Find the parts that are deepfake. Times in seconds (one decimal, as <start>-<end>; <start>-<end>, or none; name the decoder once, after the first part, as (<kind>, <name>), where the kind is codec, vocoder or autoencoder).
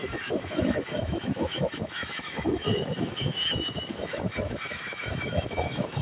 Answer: 0.0-6.0 (autoencoder, DAC-VAE)